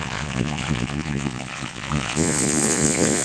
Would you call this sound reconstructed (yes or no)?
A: yes